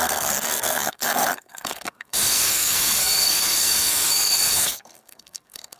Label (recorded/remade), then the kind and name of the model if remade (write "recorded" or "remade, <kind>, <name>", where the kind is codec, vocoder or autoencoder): remade, codec, SNAC